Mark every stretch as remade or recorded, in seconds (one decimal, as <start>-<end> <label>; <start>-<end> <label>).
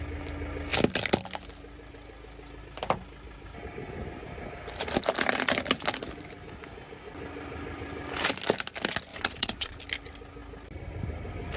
0.0-9.1 recorded; 9.1-9.8 remade; 9.8-11.6 recorded